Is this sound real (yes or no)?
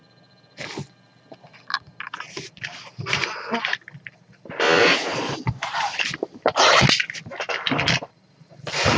yes